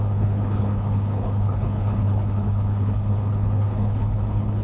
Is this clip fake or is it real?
fake